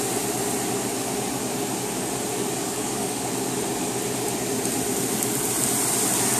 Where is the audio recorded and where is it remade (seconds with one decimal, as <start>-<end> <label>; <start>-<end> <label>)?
0.0-2.6 recorded; 2.6-3.5 remade; 3.5-6.4 recorded